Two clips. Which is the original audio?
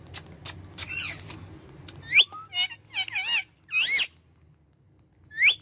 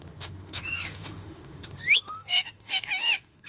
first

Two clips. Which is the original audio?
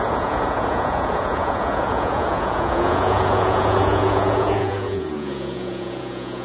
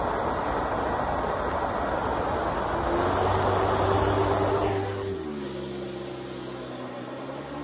second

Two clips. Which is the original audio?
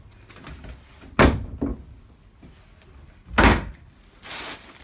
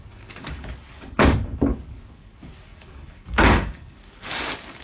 first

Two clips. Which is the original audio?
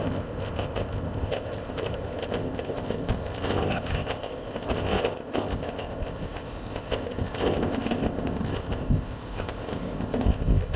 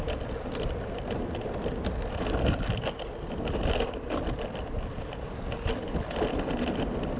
second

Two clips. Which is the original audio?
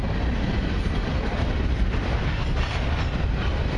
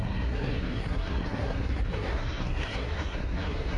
first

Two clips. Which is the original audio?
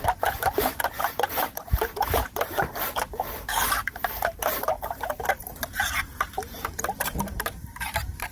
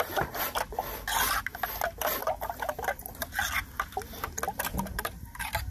second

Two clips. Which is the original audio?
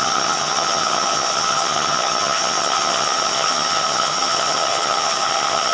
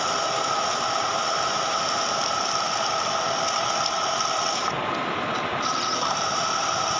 second